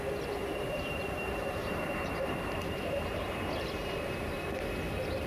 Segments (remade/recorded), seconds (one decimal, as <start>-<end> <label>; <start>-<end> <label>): 0.0-0.4 recorded; 0.4-3.6 remade; 3.6-5.3 recorded